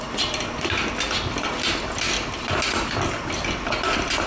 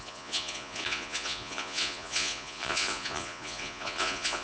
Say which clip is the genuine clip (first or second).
first